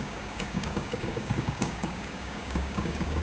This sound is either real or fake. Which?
fake